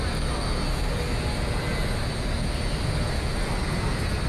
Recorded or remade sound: recorded